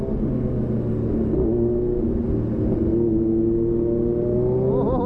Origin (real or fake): real